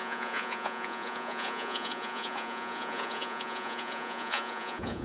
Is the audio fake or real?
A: fake